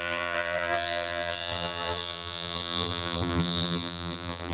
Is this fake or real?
fake